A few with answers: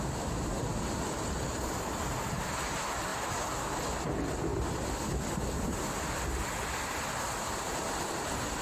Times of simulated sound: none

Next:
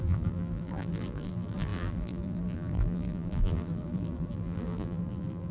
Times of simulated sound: 0.0-5.5 (vocoder, BigVGAN v2)